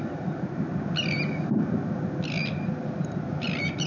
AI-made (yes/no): no